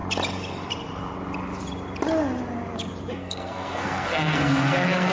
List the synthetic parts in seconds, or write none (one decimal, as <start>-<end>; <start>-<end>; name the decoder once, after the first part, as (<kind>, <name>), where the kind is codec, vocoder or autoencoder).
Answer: 3.1-5.1 (codec, SNAC)

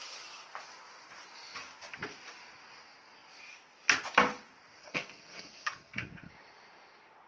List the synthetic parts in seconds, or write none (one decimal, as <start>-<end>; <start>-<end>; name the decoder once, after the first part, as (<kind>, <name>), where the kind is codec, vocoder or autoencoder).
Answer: 4.8-6.3 (codec, SNAC)

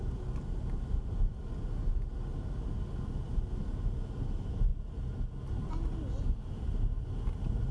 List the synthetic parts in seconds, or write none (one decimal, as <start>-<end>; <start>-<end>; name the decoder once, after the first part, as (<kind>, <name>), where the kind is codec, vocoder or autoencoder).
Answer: none

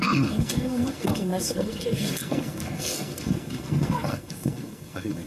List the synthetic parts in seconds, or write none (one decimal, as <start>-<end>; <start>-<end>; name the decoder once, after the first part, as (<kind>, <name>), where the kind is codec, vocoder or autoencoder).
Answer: 0.0-5.3 (codec, SNAC)

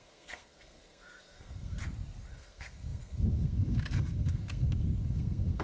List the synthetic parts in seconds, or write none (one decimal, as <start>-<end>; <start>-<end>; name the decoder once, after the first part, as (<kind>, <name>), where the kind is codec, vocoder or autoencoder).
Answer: 0.0-1.8 (codec, SNAC); 2.3-5.6

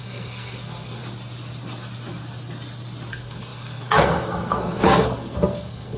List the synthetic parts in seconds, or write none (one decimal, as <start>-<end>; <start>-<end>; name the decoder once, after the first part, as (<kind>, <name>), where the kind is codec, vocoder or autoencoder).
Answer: 0.0-1.0 (codec, SNAC); 3.1-6.0

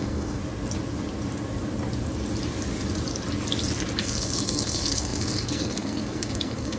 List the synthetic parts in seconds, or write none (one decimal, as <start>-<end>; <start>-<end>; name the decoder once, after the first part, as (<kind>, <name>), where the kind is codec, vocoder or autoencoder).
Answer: 0.0-0.4 (codec, SNAC); 4.0-6.8